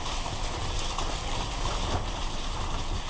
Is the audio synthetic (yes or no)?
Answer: no